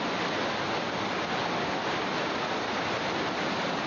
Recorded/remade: recorded